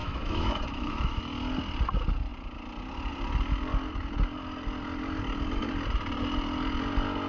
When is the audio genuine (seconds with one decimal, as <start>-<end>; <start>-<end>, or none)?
1.2-7.3